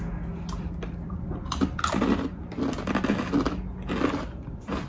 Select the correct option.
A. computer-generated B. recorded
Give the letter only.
B